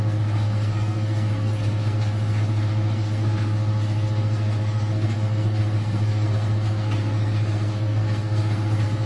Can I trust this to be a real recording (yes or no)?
no